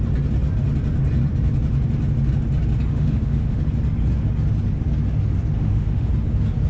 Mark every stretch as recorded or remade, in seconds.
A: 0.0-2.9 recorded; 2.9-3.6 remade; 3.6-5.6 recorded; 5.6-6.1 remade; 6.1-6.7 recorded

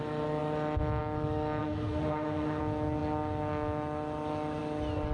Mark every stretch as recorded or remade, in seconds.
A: 0.0-1.6 recorded; 1.6-2.6 remade; 2.6-5.1 recorded